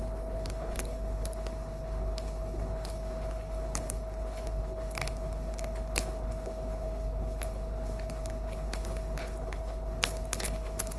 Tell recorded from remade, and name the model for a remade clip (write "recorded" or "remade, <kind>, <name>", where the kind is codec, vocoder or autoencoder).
remade, codec, HILCodec